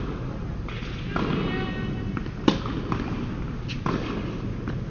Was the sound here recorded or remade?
recorded